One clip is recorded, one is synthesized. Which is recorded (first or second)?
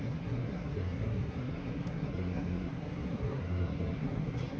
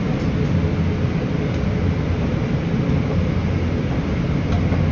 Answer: second